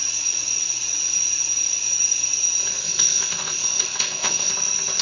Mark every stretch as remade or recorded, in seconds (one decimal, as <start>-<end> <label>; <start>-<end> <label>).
0.0-2.8 recorded; 2.8-4.5 remade; 4.5-5.0 recorded